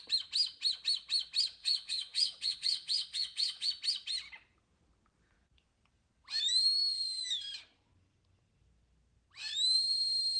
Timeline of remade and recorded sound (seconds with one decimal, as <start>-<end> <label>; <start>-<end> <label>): 0.0-1.6 recorded; 1.6-3.7 remade; 3.7-10.4 recorded